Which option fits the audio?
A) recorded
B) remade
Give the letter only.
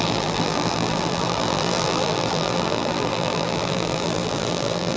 B